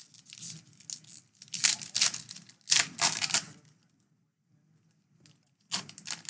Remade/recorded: recorded